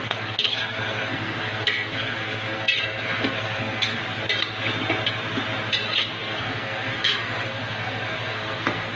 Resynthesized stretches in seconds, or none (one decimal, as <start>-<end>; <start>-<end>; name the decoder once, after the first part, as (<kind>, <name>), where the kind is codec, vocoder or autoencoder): 0.0-4.0 (codec, SNAC); 6.0-9.0